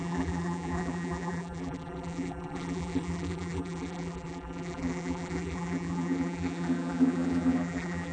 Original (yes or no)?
no